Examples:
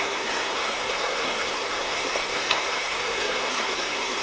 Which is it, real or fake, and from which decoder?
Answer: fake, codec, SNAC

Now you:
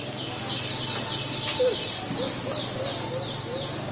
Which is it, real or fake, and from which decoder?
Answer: real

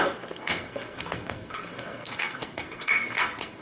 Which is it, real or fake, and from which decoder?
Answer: fake, codec, SNAC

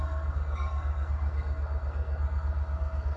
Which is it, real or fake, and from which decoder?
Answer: fake, codec, SNAC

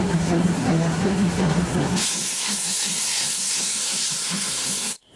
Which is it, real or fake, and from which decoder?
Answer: fake, codec, SNAC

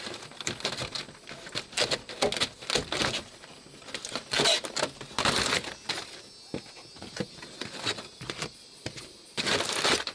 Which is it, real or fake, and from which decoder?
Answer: real